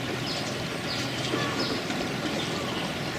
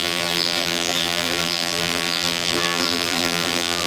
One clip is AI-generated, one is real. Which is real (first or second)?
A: first